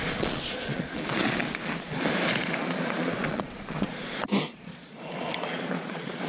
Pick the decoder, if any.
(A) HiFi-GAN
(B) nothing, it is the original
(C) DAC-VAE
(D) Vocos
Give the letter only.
D